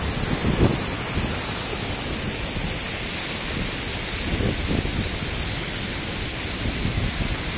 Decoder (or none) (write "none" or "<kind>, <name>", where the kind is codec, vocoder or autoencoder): none